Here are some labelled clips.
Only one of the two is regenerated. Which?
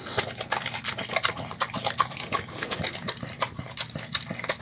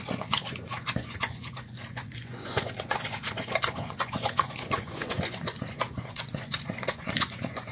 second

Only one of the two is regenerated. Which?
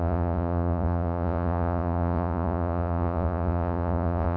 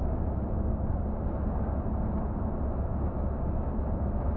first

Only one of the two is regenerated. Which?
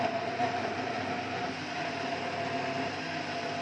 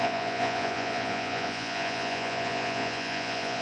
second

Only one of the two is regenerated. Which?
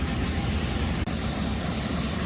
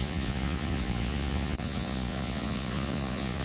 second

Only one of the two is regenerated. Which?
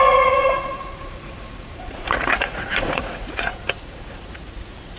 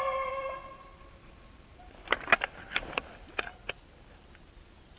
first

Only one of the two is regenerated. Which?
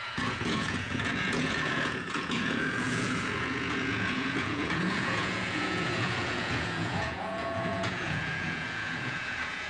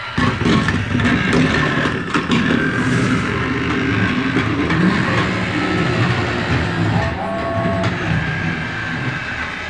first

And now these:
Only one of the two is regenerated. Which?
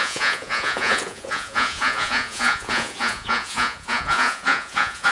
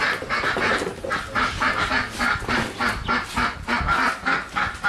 first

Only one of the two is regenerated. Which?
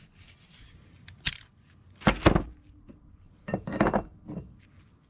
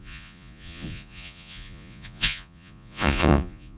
second